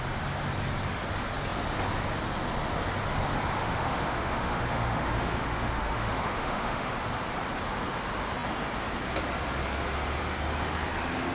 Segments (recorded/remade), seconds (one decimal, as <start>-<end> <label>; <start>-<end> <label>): 0.0-3.6 recorded; 3.6-6.9 remade; 6.9-11.3 recorded

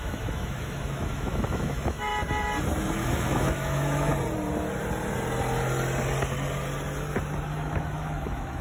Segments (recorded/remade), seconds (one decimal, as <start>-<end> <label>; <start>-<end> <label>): 0.0-2.1 remade; 2.1-2.8 recorded; 2.8-4.1 remade; 4.1-7.5 recorded; 7.5-8.6 remade

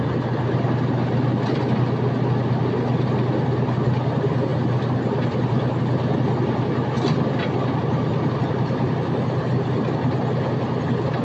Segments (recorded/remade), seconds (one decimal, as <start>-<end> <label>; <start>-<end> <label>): 0.0-11.2 recorded

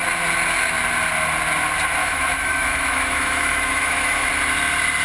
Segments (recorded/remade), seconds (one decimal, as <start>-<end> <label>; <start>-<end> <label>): 0.0-2.0 recorded; 2.0-4.3 remade; 4.3-5.0 recorded

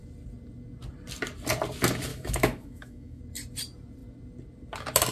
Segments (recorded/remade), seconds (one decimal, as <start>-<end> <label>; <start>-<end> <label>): 0.0-2.1 recorded; 2.1-3.2 remade; 3.2-5.1 recorded

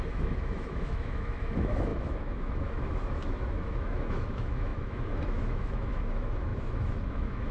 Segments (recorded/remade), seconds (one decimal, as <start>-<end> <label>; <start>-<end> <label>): 0.0-7.5 remade

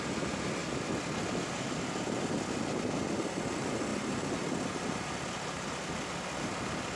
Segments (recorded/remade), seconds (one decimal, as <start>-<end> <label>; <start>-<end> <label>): 0.0-7.0 recorded